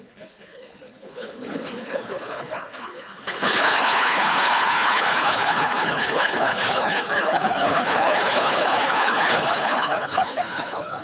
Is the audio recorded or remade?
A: remade